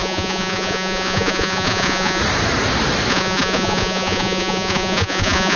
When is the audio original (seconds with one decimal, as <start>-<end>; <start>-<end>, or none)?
2.2-3.1